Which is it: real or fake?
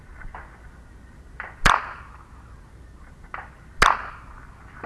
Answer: real